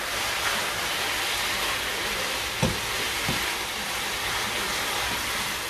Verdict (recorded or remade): recorded